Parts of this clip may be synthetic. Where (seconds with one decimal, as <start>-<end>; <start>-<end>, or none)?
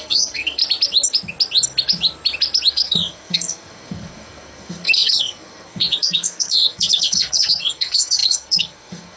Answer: 0.0-0.6; 2.7-9.2